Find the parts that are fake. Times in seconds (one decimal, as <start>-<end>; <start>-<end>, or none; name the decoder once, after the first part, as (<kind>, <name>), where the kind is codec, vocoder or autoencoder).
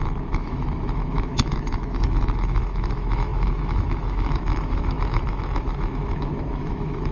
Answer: 0.0-7.1 (autoencoder, DAC-VAE)